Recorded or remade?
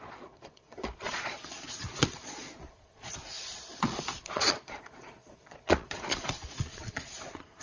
remade